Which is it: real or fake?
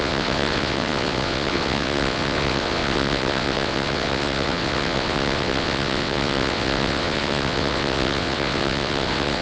fake